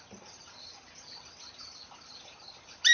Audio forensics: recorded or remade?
remade